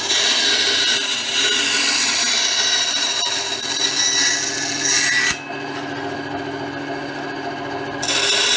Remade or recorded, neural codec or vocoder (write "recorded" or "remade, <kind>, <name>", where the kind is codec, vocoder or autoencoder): recorded